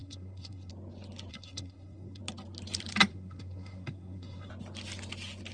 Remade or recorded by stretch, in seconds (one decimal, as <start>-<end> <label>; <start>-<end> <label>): 0.0-0.7 remade; 0.7-1.3 recorded; 1.3-2.2 remade; 2.2-3.1 recorded; 3.1-4.5 remade; 4.5-5.5 recorded